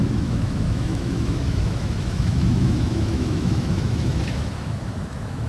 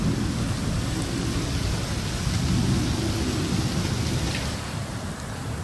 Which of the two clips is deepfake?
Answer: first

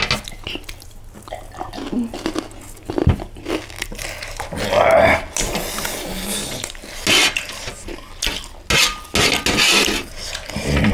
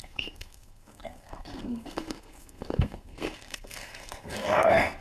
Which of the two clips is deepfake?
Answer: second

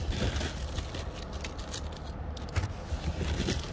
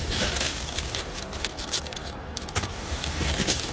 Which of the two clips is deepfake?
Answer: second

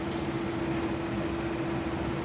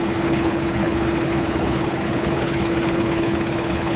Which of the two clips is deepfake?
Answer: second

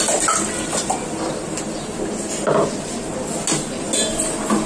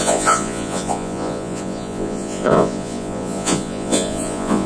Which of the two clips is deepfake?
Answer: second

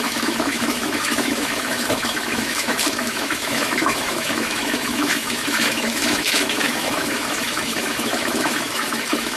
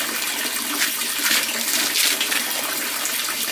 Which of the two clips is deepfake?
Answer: first